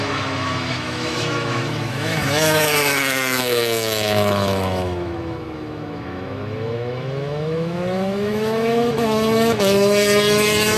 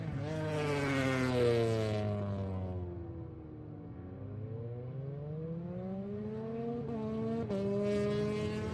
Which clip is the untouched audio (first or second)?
second